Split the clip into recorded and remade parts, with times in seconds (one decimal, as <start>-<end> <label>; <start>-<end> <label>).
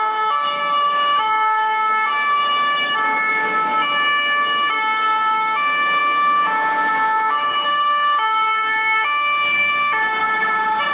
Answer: 0.0-3.3 remade; 3.3-4.7 recorded; 4.7-10.9 remade